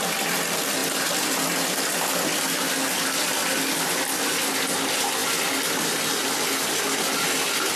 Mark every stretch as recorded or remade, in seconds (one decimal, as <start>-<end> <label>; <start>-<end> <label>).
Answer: 0.0-7.8 recorded